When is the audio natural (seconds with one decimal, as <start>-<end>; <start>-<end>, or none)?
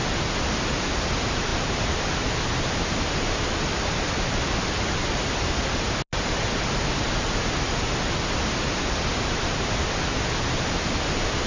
0.0-11.5